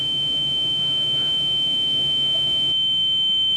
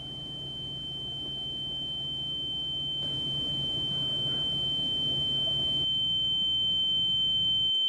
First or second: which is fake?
first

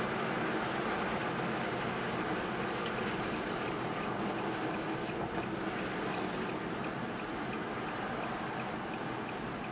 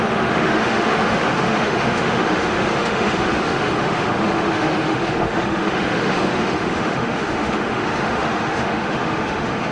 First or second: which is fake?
second